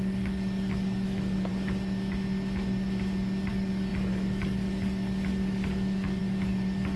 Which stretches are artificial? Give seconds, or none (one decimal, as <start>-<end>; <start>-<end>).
0.0-1.5; 3.5-7.0